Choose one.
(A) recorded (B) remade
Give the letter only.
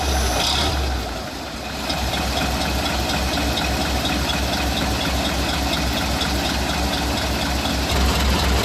A